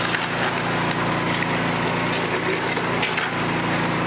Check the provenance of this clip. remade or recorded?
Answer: recorded